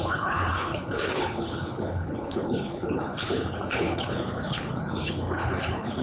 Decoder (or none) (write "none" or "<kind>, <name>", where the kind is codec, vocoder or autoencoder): codec, HILCodec